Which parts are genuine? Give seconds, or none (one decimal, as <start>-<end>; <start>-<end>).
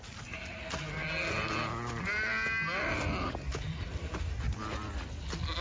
0.0-5.6